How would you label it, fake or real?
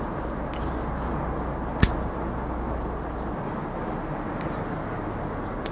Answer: real